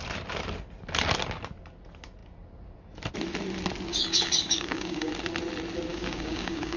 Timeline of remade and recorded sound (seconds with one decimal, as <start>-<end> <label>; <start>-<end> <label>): 0.0-3.9 recorded; 3.9-5.1 remade; 5.1-5.9 recorded; 5.9-6.8 remade

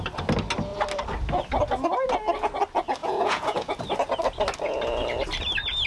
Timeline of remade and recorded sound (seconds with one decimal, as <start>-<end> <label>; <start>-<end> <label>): 0.0-3.0 recorded; 3.0-3.8 remade; 3.8-5.9 recorded

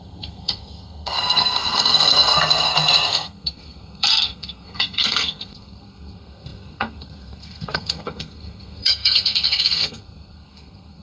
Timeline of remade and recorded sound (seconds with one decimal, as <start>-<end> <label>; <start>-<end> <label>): 0.0-11.0 remade